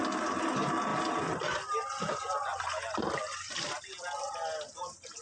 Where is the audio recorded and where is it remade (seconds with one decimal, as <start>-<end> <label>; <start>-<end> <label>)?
0.0-5.2 recorded